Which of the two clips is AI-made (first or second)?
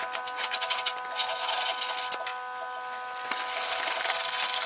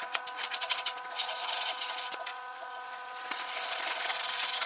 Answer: second